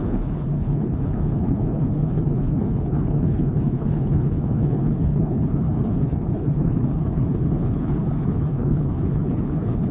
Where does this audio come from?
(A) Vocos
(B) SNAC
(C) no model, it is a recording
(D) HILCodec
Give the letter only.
D